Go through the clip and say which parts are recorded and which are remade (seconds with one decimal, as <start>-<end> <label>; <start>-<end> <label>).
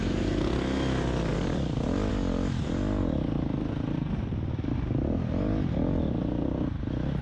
0.0-7.2 recorded